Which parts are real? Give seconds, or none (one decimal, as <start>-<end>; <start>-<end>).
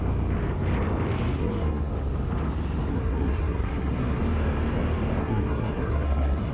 0.0-1.4; 1.9-2.9; 4.2-5.2